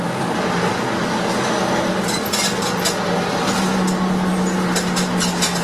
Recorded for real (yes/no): yes